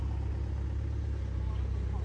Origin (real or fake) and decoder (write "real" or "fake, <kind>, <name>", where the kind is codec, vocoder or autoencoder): real